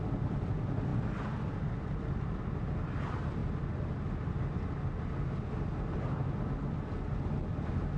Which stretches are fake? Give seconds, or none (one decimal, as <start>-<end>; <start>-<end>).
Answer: none